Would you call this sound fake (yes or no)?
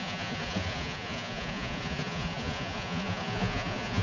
yes